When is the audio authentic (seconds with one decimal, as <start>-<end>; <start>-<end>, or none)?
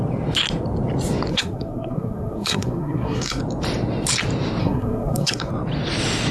0.0-1.3; 3.4-4.6; 5.5-6.3